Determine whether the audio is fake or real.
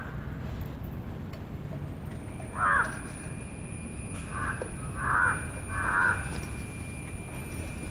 real